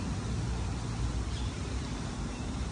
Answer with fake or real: real